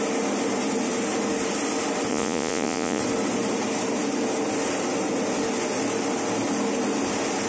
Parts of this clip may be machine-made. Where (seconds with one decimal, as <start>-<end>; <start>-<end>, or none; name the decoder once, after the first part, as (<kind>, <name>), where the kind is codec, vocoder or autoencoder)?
2.1-3.0 (vocoder, Vocos)